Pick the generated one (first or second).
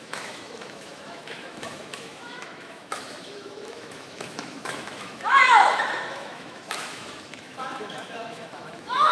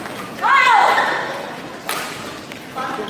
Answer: first